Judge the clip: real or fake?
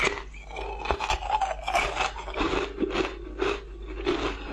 real